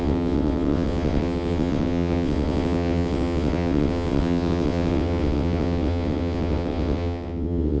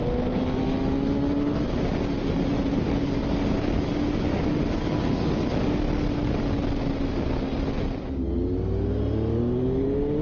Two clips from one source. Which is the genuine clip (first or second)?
second